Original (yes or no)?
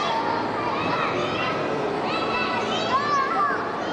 yes